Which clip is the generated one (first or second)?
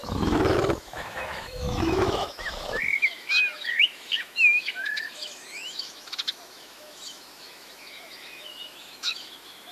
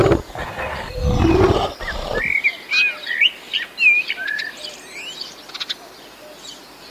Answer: first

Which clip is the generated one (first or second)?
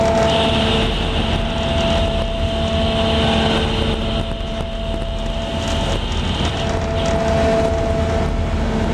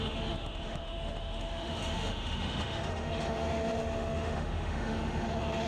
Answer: second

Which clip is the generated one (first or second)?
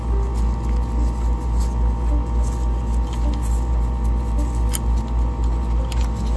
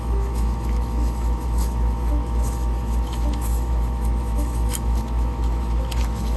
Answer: second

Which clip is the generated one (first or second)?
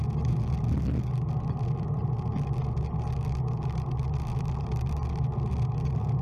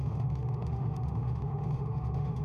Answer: second